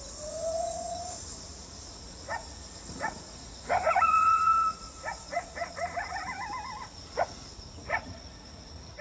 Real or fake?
fake